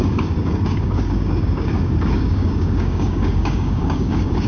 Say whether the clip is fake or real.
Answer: fake